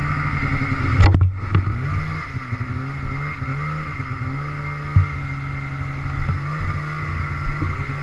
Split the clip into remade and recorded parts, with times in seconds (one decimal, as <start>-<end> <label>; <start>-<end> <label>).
0.0-8.0 recorded